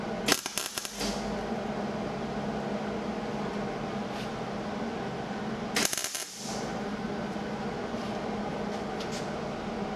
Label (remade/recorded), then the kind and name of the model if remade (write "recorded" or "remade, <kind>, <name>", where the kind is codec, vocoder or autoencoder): recorded